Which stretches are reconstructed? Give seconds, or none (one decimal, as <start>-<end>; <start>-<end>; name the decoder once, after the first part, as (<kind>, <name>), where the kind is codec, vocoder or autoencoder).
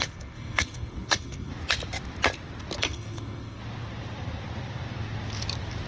0.0-1.5 (codec, SNAC); 2.8-3.6